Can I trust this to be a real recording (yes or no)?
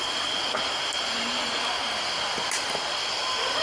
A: yes